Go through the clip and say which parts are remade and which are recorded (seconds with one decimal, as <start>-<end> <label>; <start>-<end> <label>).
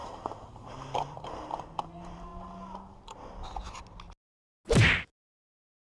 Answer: 0.0-2.3 remade; 2.3-5.9 recorded